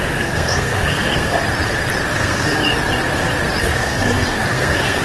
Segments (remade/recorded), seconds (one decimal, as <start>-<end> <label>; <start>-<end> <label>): 0.0-1.4 remade; 1.4-2.1 recorded; 2.1-2.6 remade; 2.6-3.6 recorded; 3.6-5.0 remade